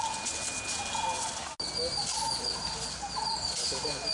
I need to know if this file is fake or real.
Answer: real